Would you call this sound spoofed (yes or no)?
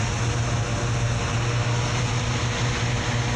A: no